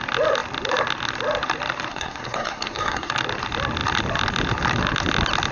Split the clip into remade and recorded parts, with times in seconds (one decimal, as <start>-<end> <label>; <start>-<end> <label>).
0.0-1.9 recorded; 1.9-3.1 remade; 3.1-5.5 recorded